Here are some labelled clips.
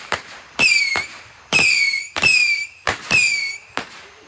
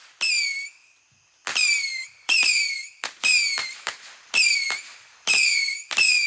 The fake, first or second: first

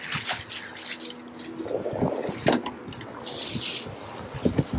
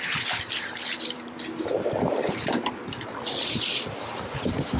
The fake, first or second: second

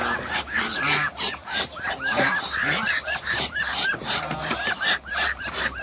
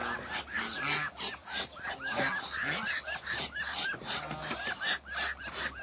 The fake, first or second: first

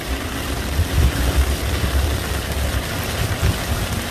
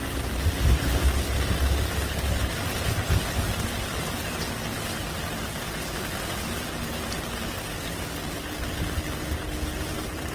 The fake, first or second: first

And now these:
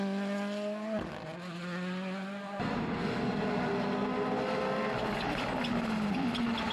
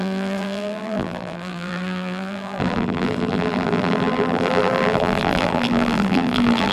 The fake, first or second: second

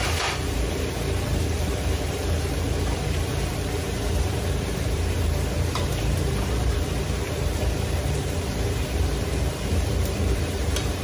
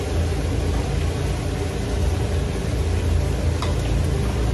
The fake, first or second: first